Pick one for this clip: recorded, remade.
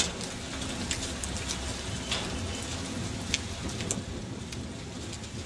recorded